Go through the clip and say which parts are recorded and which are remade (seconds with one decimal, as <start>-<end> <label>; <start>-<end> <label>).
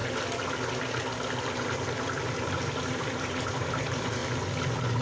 0.0-3.0 recorded; 3.0-4.2 remade; 4.2-5.0 recorded